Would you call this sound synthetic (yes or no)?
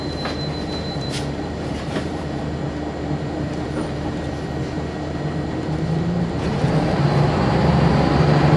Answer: yes